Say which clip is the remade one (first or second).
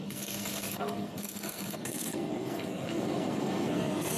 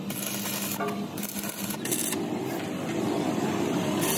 first